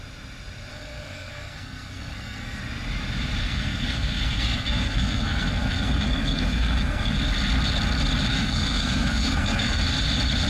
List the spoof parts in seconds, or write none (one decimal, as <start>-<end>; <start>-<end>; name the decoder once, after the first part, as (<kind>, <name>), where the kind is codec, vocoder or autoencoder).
0.7-2.6 (codec, SNAC); 3.4-7.2; 8.3-9.8